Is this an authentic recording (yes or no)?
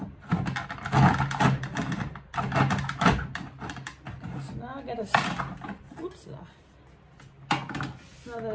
yes